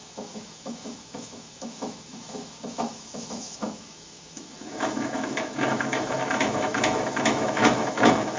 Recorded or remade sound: remade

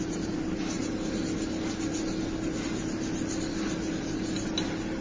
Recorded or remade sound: recorded